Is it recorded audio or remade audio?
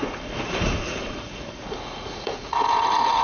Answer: remade